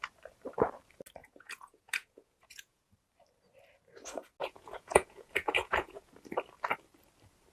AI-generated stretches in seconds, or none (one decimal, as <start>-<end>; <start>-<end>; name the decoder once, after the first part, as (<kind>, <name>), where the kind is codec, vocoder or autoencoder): 1.2-2.9 (vocoder, Vocos); 4.4-6.1